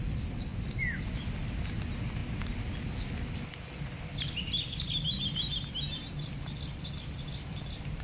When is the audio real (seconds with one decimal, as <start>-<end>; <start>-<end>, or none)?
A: 0.0-8.0